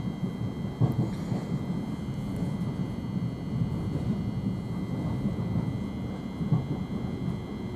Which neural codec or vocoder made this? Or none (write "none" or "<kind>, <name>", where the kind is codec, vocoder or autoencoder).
none